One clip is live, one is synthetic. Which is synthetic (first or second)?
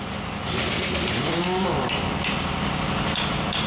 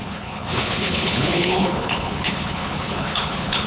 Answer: second